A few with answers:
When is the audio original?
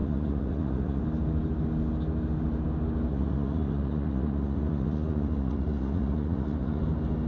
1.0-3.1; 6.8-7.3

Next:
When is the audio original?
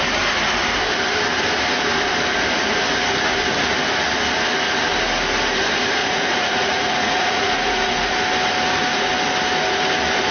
0.0-6.0; 8.1-10.3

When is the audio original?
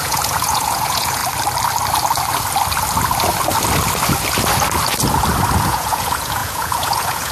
1.2-5.6